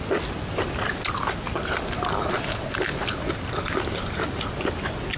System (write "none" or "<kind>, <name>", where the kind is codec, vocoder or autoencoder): none